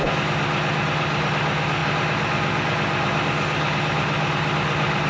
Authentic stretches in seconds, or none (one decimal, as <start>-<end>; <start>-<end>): 0.0-5.1